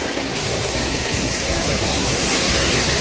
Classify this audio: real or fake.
fake